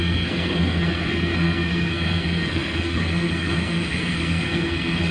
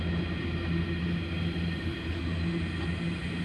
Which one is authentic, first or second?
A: second